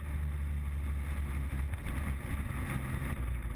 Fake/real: real